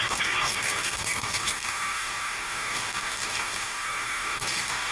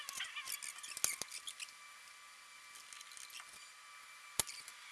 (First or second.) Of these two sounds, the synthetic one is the first